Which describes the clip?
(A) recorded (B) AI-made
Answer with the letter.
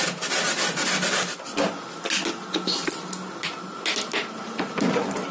A